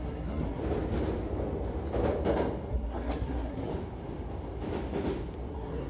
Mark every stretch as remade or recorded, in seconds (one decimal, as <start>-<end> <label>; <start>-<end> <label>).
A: 0.0-0.6 remade; 0.6-2.7 recorded; 2.7-3.7 remade; 3.7-5.5 recorded; 5.5-5.9 remade

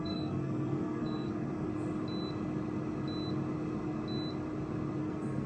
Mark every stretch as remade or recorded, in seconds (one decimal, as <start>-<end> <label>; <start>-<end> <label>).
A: 0.0-1.7 remade; 1.7-5.0 recorded; 5.0-5.5 remade

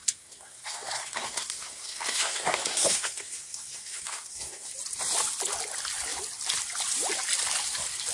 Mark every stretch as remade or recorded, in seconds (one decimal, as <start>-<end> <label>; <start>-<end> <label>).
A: 0.0-4.7 remade; 4.7-8.1 recorded

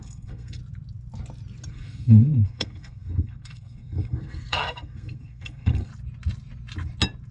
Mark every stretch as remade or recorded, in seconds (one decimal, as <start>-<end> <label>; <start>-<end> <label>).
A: 0.0-0.6 remade; 0.6-1.7 recorded; 1.7-5.9 remade; 5.9-7.3 recorded

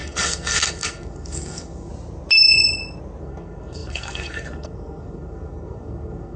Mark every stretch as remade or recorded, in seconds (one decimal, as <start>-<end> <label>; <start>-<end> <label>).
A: 0.0-1.9 remade; 1.9-3.2 recorded; 3.2-6.4 remade